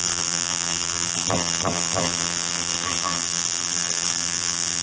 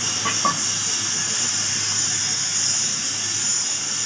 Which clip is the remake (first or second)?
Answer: first